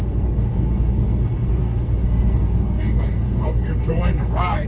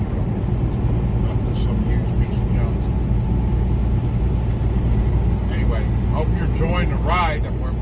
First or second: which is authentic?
second